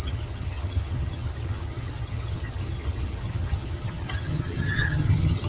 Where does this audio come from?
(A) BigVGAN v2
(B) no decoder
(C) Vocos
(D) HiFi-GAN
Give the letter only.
D